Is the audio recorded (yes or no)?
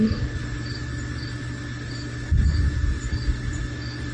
yes